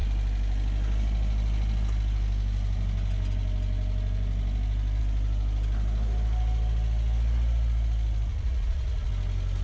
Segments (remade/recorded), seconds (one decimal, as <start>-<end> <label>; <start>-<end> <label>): 0.0-8.3 recorded; 8.3-9.1 remade; 9.1-9.6 recorded

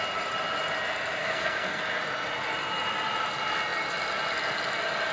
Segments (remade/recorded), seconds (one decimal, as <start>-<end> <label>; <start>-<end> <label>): 0.0-1.2 recorded; 1.2-1.8 remade; 1.8-5.1 recorded

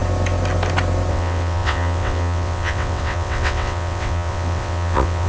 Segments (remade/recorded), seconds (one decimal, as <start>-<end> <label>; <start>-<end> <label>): 0.0-1.1 recorded; 1.1-5.3 remade

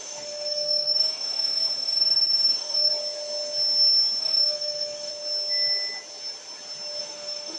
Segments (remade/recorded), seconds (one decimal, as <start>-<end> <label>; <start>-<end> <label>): 0.0-2.9 remade; 2.9-4.2 recorded; 4.2-5.1 remade; 5.1-7.0 recorded; 7.0-7.6 remade

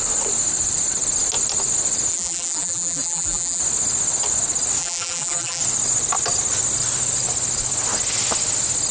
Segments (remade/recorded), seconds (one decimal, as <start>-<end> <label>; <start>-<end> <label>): 0.0-2.1 recorded; 2.1-3.6 remade; 3.6-4.8 recorded; 4.8-5.6 remade; 5.6-8.9 recorded

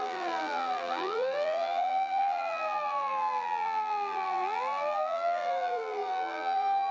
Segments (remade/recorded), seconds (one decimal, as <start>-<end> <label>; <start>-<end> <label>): 0.0-6.9 remade

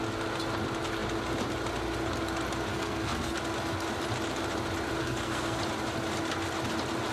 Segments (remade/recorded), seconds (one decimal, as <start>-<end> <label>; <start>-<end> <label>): 0.0-2.7 recorded; 2.7-3.4 remade; 3.4-5.0 recorded; 5.0-5.6 remade; 5.6-7.1 recorded

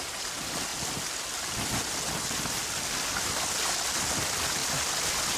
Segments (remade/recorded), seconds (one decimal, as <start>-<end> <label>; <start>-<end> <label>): 0.0-5.4 recorded